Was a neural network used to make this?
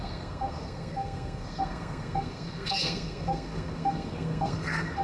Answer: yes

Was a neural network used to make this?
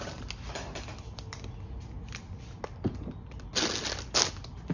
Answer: no